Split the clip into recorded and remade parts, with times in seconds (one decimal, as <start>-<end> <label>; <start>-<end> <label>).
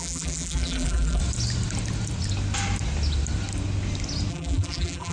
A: 0.0-1.2 remade; 1.2-4.3 recorded; 4.3-5.1 remade